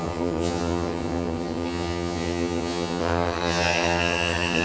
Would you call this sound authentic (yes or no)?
no